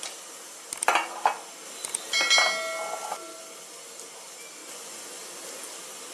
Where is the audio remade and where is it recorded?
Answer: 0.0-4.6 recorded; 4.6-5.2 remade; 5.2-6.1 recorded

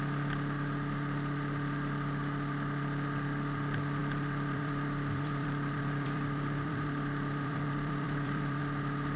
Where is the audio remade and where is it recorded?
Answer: 0.0-4.0 recorded; 4.0-8.6 remade; 8.6-9.2 recorded

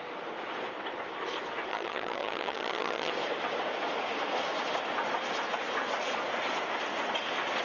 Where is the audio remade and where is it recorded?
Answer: 0.0-1.7 recorded; 1.7-3.1 remade; 3.1-7.6 recorded

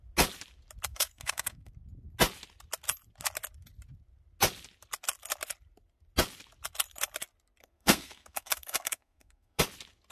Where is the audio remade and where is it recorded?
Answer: 0.0-0.9 recorded; 0.9-1.7 remade; 1.7-7.6 recorded; 7.6-9.6 remade; 9.6-10.1 recorded

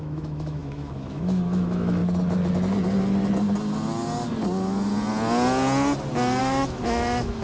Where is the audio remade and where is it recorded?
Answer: 0.0-2.0 remade; 2.0-6.4 recorded; 6.4-7.4 remade

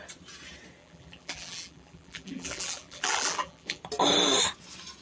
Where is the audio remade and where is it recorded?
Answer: 0.0-0.8 recorded; 0.8-3.8 remade; 3.8-5.0 recorded

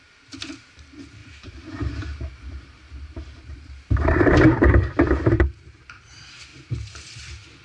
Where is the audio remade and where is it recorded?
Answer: 0.0-1.2 recorded; 1.2-4.9 remade; 4.9-6.5 recorded; 6.5-7.1 remade; 7.1-7.6 recorded